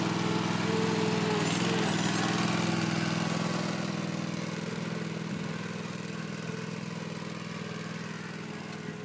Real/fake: real